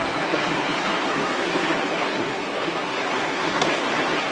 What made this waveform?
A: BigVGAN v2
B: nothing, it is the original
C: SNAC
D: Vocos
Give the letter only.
C